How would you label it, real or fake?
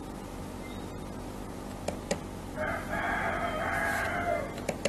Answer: real